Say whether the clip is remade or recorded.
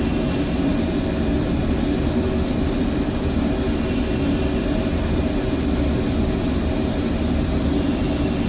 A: recorded